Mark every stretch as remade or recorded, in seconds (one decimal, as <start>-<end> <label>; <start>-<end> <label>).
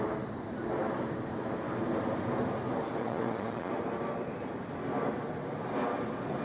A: 0.0-3.0 recorded; 3.0-3.7 remade; 3.7-6.4 recorded